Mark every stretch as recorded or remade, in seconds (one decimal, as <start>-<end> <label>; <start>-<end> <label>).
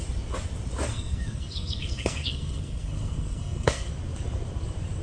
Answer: 0.0-0.9 recorded; 0.9-3.9 remade; 3.9-5.0 recorded